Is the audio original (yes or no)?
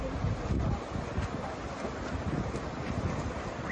yes